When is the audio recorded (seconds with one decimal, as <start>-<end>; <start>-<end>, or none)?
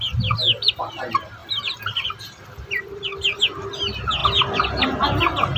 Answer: 0.0-1.4; 3.4-5.6